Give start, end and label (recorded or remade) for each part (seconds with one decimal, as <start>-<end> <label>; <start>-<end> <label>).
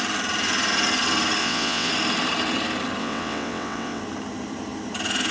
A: 0.0-1.4 recorded; 1.4-1.9 remade; 1.9-3.0 recorded; 3.0-4.0 remade; 4.0-5.3 recorded